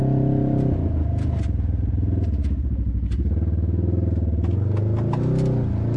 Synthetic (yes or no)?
no